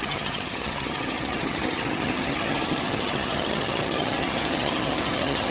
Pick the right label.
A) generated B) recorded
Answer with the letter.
A